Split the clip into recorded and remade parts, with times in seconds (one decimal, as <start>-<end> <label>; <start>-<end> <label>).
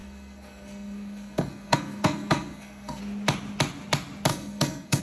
0.0-3.0 remade; 3.0-4.3 recorded; 4.3-5.0 remade